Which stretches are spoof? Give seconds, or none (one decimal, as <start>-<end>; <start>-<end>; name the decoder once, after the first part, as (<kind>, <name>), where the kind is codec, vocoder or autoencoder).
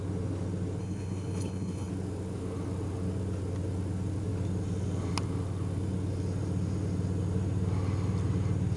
0.8-1.9 (codec, HILCodec)